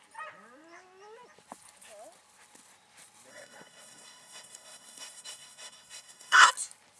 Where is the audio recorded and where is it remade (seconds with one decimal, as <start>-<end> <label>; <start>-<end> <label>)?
0.0-3.3 recorded; 3.3-6.5 remade; 6.5-7.0 recorded